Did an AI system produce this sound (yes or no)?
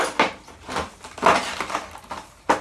no